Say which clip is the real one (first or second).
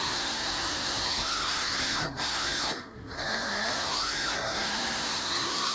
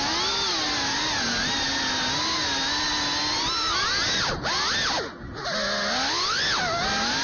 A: second